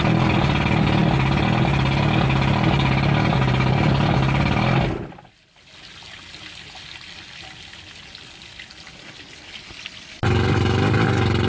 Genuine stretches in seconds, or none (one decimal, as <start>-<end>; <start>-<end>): 0.0-11.5